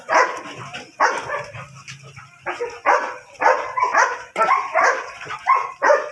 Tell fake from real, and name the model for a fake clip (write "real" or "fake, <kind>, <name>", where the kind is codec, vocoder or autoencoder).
real